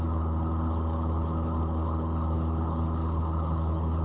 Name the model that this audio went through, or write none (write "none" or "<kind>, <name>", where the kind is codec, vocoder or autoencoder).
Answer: codec, HILCodec